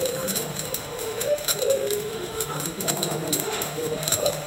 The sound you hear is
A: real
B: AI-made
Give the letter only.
B